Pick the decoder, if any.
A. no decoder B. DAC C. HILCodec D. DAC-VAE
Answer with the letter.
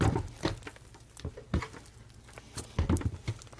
A